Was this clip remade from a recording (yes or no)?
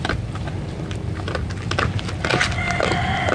no